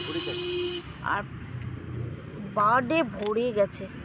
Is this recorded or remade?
recorded